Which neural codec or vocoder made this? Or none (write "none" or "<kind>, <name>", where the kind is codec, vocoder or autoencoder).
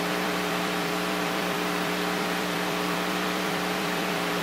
vocoder, BigVGAN v2